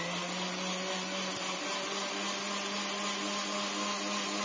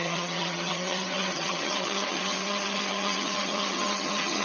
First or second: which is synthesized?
second